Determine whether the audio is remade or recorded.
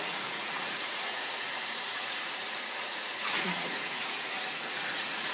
remade